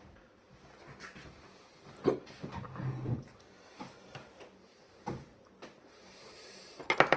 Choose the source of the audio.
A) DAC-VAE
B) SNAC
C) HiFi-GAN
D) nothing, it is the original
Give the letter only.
D